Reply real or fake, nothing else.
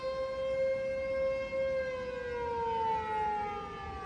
real